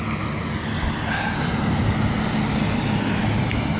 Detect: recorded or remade recorded